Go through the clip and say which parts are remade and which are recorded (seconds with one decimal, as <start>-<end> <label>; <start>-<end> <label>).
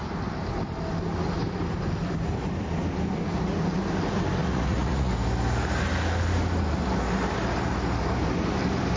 0.0-4.4 recorded; 4.4-5.1 remade; 5.1-9.0 recorded